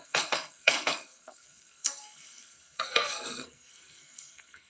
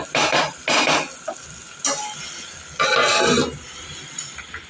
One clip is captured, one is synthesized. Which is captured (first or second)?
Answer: second